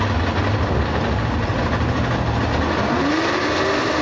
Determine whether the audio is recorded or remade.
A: recorded